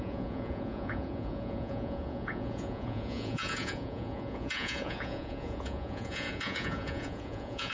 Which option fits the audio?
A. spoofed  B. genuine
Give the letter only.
A